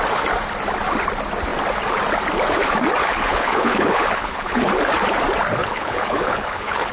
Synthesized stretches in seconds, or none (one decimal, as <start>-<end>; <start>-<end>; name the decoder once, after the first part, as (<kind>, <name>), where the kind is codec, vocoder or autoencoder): 3.0-4.7 (codec, HILCodec); 5.6-6.9